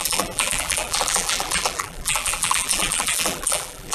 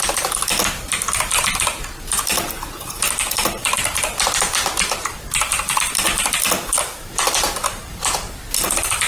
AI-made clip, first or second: first